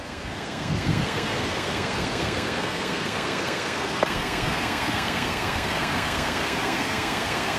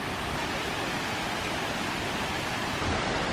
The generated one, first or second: first